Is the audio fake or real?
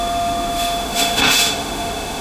fake